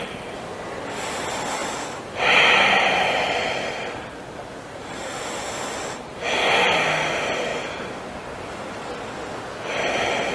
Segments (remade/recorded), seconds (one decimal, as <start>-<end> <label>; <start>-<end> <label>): 0.0-10.3 recorded